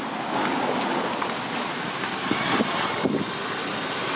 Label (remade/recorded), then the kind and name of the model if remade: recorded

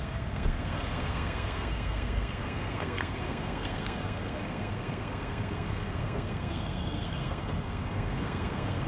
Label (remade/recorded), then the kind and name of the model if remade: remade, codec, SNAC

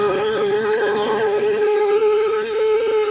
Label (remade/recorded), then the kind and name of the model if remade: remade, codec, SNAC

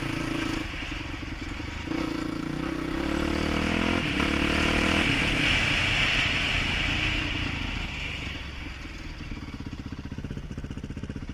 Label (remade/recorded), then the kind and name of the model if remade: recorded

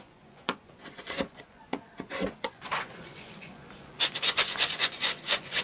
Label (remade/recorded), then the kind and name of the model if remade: remade, vocoder, Vocos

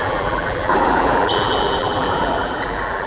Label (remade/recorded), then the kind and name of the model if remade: remade, vocoder, BigVGAN v2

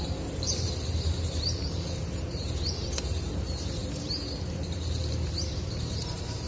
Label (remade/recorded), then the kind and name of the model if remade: remade, vocoder, BigVGAN v2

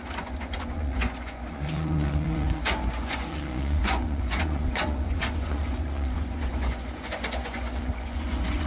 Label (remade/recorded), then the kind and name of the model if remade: remade, vocoder, Vocos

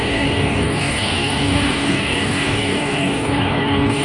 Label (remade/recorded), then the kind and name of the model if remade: remade, codec, DAC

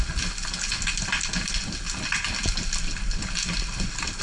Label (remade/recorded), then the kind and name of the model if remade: recorded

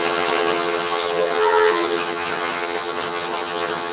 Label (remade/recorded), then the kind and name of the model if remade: remade, vocoder, HiFi-GAN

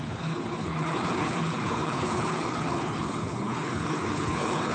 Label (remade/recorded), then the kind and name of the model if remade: remade, codec, HILCodec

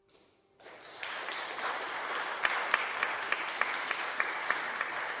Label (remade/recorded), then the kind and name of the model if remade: recorded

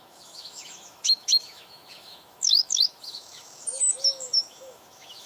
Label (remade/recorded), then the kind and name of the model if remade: remade, autoencoder, DAC-VAE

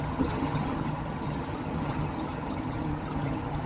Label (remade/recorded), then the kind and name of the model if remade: remade, vocoder, HiFi-GAN